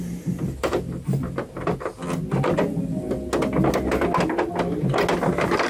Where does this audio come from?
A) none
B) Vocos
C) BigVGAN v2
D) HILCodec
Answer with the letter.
A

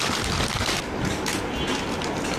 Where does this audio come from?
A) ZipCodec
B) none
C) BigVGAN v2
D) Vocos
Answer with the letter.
B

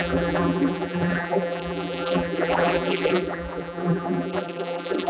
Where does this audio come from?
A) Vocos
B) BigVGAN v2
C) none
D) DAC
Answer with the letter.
B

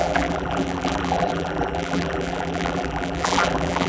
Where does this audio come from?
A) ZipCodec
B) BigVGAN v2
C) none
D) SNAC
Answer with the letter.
B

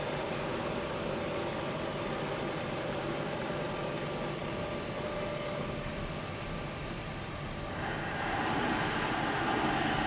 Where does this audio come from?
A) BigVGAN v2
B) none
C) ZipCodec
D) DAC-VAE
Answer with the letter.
A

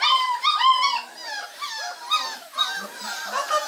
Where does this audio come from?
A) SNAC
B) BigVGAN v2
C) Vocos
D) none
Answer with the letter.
D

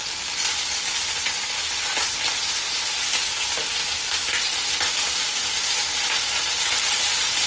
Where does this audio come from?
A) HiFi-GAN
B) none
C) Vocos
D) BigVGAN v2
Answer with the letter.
B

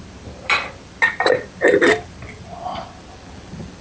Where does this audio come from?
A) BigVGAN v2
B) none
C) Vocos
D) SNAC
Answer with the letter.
A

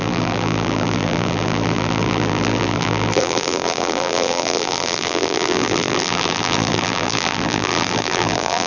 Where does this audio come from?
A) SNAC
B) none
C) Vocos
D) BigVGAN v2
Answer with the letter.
D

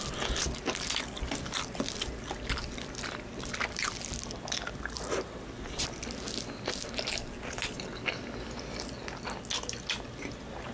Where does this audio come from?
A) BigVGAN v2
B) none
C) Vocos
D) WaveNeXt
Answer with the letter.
B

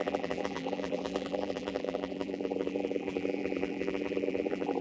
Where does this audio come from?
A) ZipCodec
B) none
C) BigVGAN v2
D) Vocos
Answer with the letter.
C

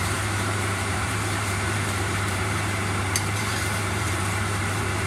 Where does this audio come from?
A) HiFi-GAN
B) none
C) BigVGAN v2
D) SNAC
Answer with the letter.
C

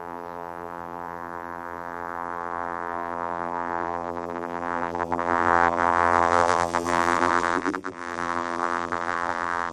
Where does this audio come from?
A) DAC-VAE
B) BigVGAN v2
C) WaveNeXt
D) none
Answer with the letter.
B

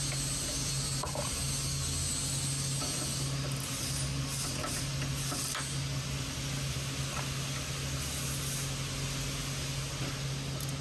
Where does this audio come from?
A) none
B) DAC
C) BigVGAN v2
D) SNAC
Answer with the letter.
A